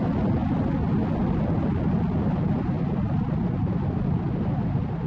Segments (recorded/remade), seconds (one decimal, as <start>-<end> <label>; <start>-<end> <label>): 0.0-5.1 recorded